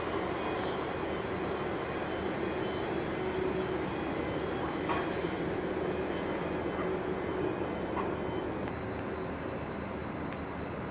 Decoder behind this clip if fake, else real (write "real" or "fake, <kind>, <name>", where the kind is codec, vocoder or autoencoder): real